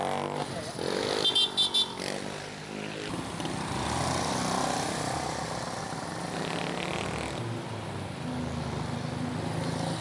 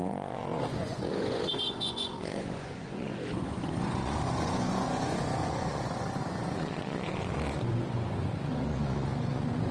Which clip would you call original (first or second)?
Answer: first